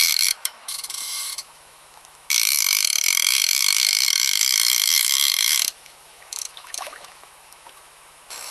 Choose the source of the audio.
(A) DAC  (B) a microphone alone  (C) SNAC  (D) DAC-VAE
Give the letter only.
D